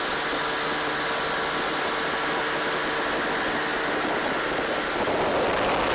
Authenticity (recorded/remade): recorded